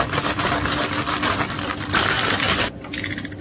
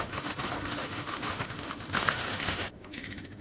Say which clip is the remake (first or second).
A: second